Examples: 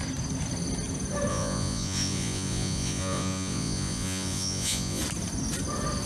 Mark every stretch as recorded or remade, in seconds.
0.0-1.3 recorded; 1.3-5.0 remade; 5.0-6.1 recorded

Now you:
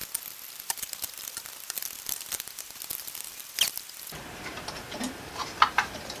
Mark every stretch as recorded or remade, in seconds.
0.0-0.6 recorded; 0.6-6.2 remade